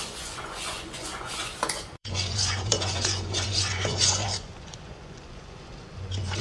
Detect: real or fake fake